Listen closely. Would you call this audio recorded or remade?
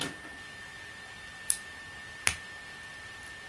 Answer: recorded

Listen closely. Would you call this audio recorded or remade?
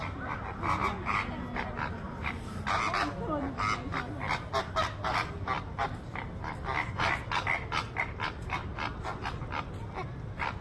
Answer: recorded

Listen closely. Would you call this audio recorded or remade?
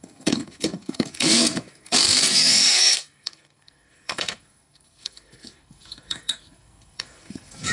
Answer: remade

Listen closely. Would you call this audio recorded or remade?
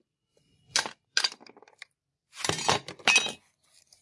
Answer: recorded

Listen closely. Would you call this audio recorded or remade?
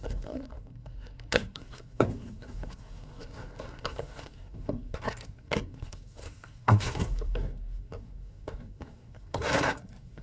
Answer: remade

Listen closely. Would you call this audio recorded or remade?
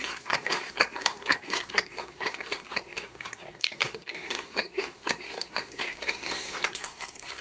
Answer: remade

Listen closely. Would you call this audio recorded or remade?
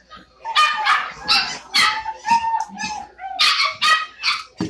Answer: recorded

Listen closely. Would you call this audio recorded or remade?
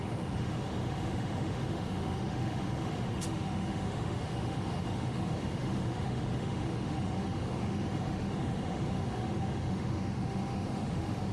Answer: remade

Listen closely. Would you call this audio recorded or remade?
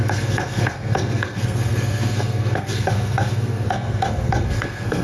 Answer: remade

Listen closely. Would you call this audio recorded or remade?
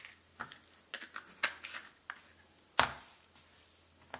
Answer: recorded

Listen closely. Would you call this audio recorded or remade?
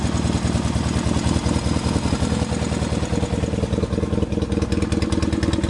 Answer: recorded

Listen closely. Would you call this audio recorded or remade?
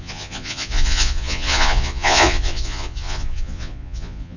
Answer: remade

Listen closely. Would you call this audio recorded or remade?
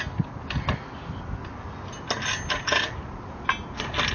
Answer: recorded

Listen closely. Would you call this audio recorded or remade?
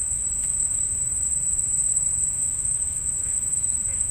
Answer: remade